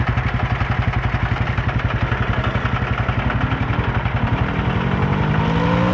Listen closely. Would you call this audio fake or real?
real